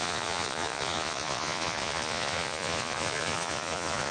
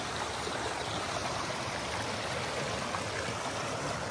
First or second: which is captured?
second